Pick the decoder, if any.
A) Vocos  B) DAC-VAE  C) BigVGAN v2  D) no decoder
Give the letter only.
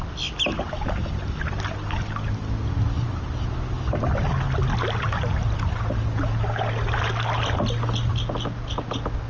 D